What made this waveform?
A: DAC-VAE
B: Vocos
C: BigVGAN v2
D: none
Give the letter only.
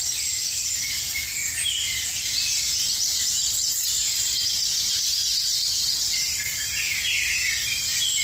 C